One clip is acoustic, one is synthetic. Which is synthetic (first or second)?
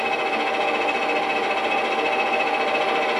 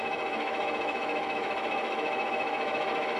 second